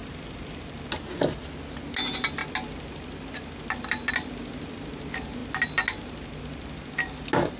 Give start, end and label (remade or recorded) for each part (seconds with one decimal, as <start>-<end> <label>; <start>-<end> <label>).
0.0-0.6 remade; 0.6-7.6 recorded